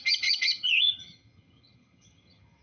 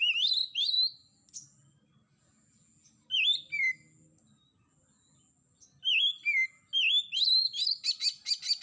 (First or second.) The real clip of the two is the second